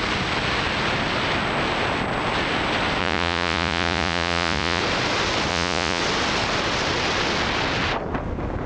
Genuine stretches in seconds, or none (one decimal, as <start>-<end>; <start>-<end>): 0.0-3.0; 4.8-5.5; 6.0-8.7